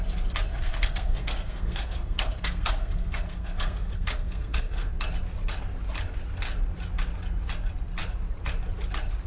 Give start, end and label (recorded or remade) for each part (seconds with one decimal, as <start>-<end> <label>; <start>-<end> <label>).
0.0-0.5 recorded; 0.5-4.9 remade; 4.9-9.3 recorded